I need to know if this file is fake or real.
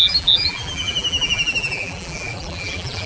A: fake